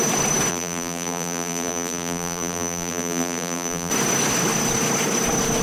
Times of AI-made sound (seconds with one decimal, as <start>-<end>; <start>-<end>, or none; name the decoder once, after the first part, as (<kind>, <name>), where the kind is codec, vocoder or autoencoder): 0.5-3.9 (vocoder, BigVGAN v2)